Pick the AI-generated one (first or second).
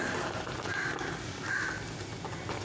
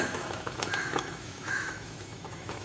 second